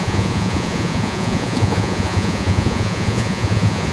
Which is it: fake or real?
fake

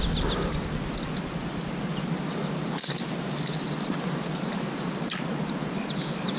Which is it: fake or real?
real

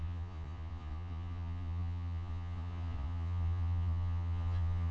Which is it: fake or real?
fake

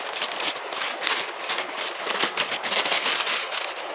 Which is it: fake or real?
real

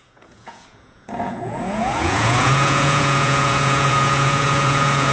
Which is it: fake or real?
fake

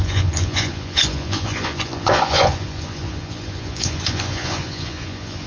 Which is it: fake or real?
fake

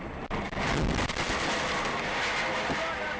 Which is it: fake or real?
real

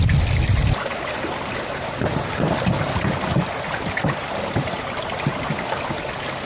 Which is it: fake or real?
real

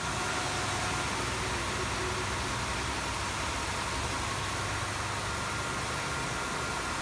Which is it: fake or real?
real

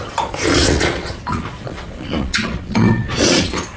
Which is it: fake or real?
fake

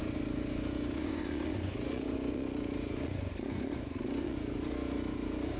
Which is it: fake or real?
fake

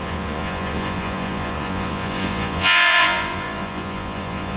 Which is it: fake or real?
fake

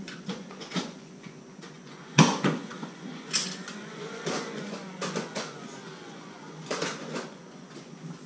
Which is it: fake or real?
fake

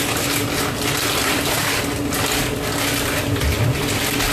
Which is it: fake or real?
real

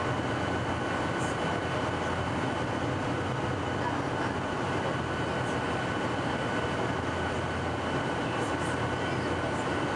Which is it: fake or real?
real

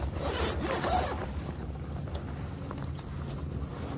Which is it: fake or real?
real